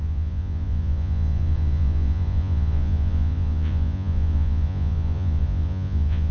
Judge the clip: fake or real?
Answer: fake